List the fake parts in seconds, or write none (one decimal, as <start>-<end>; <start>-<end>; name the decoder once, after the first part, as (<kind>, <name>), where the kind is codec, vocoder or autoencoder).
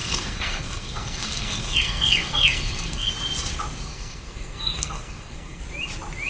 0.0-3.1 (codec, SNAC); 3.9-5.6